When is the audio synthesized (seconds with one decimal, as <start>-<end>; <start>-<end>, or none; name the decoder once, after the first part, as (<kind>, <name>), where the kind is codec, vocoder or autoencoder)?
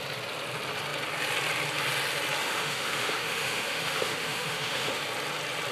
2.4-5.0 (autoencoder, DAC-VAE)